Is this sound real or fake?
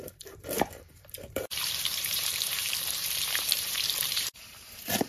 fake